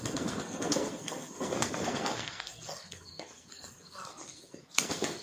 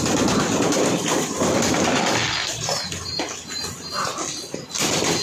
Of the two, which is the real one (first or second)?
second